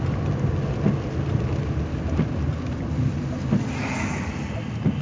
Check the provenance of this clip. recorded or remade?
recorded